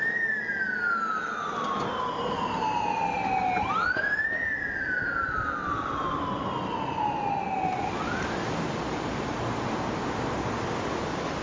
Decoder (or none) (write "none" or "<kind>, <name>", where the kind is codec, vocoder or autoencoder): none